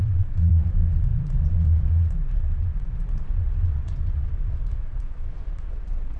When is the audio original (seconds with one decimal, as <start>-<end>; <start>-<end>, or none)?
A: none